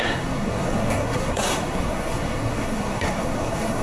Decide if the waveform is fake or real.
fake